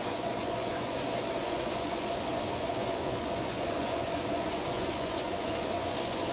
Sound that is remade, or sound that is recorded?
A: remade